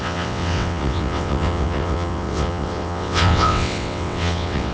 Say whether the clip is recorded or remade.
remade